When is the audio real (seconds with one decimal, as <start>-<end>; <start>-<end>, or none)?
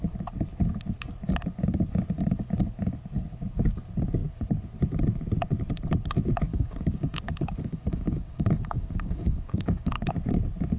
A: 0.0-6.5; 10.1-10.8